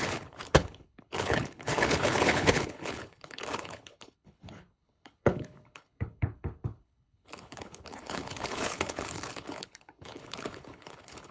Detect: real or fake fake